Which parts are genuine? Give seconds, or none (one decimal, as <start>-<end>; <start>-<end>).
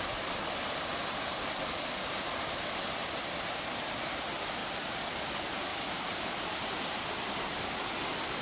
0.0-4.6; 5.1-8.4